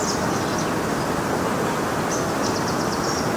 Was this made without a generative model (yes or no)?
yes